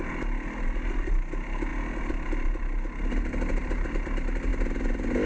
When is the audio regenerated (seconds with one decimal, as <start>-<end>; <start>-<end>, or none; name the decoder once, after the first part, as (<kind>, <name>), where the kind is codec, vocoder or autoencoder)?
none